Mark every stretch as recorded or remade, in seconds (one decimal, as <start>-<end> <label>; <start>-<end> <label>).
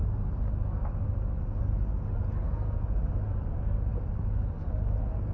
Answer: 0.0-5.3 recorded